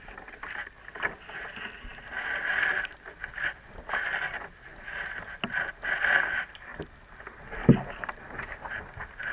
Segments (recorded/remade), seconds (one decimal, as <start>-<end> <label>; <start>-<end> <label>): 0.0-9.3 recorded